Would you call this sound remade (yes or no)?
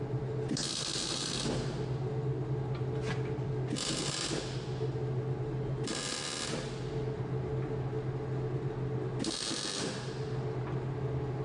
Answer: no